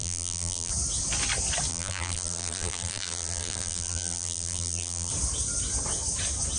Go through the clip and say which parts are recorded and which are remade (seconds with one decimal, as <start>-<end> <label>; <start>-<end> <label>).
0.0-0.7 remade; 0.7-1.7 recorded; 1.7-5.1 remade; 5.1-6.6 recorded